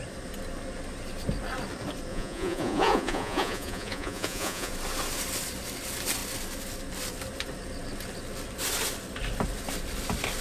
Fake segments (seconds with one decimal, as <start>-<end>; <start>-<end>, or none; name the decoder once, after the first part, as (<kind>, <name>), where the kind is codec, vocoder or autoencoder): 2.1-4.7 (vocoder, Vocos)